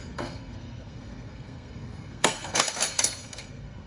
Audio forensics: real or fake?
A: fake